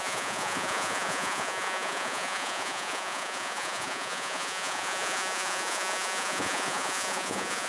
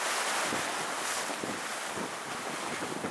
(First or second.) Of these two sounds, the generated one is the first